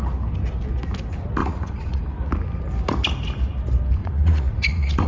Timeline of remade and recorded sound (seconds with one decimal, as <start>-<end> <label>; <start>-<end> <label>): 0.0-1.4 recorded; 1.4-2.0 remade; 2.0-4.0 recorded; 4.0-5.1 remade